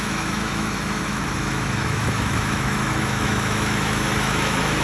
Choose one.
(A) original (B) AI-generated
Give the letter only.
B